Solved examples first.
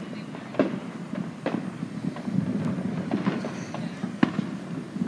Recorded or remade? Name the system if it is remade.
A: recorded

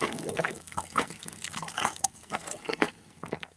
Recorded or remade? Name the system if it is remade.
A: remade, codec, SNAC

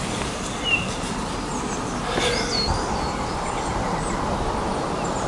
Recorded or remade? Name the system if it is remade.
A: recorded